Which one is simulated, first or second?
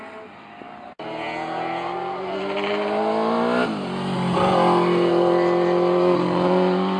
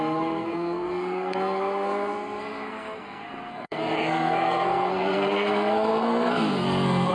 second